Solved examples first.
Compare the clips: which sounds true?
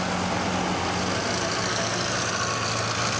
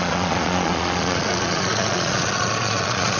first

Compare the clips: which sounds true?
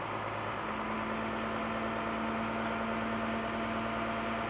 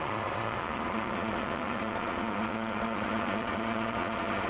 first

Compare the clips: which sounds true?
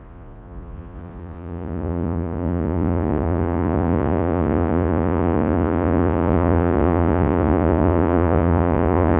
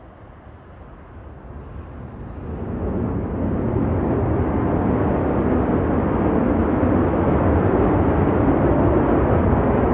second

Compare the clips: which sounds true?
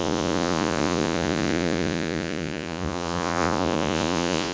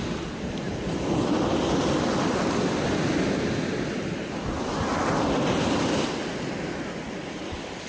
second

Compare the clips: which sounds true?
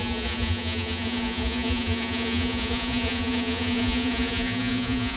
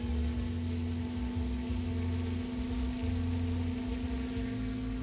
second